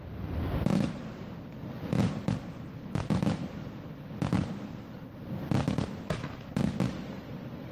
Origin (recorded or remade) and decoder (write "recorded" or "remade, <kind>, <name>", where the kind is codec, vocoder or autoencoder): recorded